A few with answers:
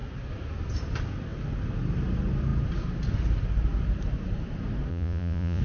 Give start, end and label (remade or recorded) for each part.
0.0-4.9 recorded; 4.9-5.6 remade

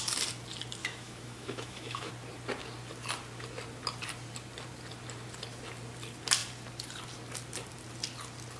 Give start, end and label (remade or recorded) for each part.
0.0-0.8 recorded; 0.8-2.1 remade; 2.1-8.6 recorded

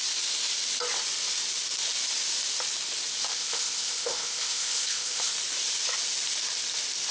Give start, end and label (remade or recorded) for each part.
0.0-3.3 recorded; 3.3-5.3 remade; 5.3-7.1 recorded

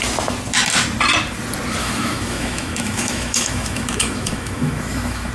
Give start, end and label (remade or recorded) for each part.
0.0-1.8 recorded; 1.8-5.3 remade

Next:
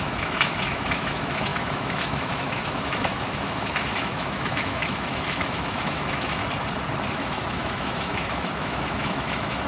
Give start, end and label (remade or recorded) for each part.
0.0-6.4 remade; 6.4-7.1 recorded; 7.1-9.7 remade

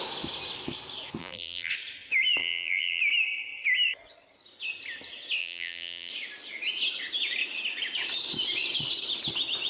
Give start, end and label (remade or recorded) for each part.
0.0-1.2 recorded; 1.2-1.7 remade; 1.7-2.4 recorded; 2.4-3.0 remade; 3.0-5.4 recorded; 5.4-6.1 remade; 6.1-9.7 recorded

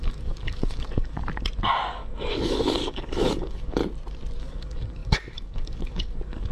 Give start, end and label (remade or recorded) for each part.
0.0-1.2 remade; 1.2-1.9 recorded; 1.9-3.8 remade; 3.8-4.4 recorded; 4.4-6.5 remade

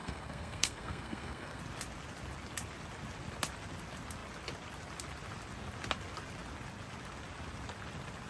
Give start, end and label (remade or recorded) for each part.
0.0-1.6 remade; 1.6-8.3 recorded